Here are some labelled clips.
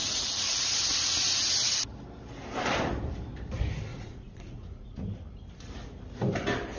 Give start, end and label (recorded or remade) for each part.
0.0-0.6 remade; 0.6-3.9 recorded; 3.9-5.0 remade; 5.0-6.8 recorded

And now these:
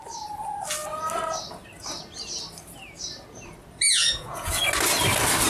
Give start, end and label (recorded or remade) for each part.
0.0-3.9 recorded; 3.9-4.6 remade; 4.6-5.5 recorded

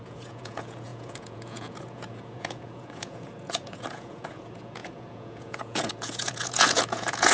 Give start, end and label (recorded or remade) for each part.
0.0-7.3 remade

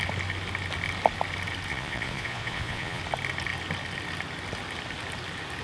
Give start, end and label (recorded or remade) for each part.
0.0-1.7 recorded; 1.7-3.0 remade; 3.0-5.6 recorded

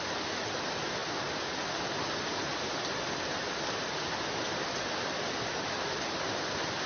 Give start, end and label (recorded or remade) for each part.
0.0-6.9 recorded